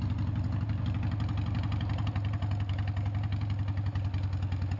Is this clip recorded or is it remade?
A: recorded